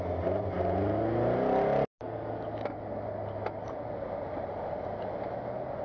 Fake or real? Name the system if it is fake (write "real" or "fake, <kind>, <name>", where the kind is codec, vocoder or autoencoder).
real